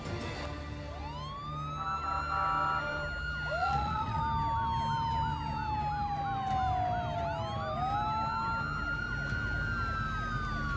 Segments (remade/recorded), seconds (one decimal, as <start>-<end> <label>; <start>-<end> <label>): 0.0-3.6 recorded; 3.6-4.2 remade; 4.2-10.8 recorded